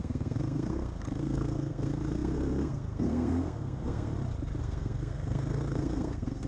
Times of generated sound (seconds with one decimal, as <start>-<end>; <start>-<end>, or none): 0.0-4.1; 4.6-6.5

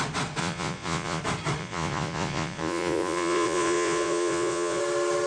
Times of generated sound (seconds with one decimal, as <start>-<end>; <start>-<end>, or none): 0.4-1.2; 1.6-4.8

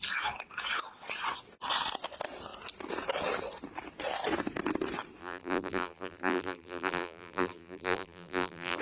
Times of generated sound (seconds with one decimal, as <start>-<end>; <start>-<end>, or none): 5.2-8.8

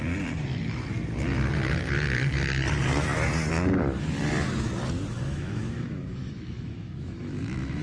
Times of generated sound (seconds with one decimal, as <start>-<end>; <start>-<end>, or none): 5.1-7.8

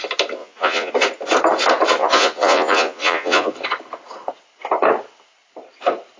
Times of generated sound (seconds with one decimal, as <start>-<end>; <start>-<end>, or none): 0.4-0.9; 2.0-3.5

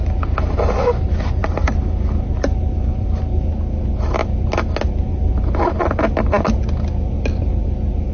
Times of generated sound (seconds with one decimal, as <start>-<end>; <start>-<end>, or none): 1.4-3.2